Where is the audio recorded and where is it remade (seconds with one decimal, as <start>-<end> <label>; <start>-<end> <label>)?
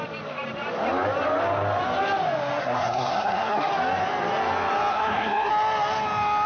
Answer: 0.0-2.6 recorded; 2.6-3.7 remade; 3.7-4.9 recorded; 4.9-5.5 remade; 5.5-6.5 recorded